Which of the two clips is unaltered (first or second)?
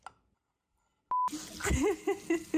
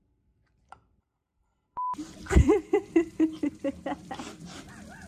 first